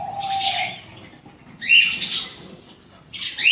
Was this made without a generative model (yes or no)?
yes